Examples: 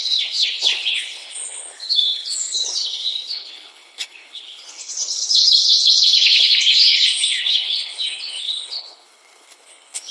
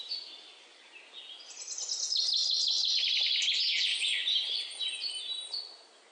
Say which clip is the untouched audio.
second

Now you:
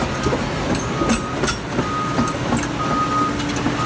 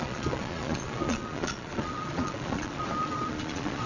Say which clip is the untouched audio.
first